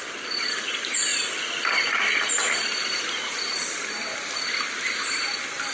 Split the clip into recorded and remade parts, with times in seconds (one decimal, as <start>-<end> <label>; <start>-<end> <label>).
0.0-5.7 recorded

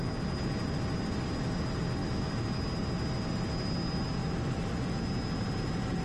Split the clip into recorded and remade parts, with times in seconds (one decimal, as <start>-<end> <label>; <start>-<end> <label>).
0.0-6.0 recorded

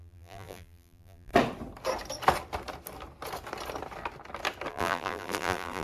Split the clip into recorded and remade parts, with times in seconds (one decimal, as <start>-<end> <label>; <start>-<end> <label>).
0.0-1.3 remade; 1.3-4.7 recorded; 4.7-5.8 remade

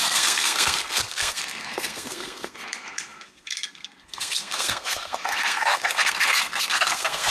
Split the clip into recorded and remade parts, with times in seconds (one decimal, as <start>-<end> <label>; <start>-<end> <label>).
0.0-7.3 remade